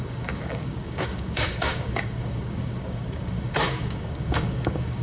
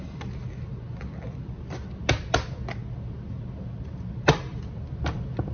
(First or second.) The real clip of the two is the second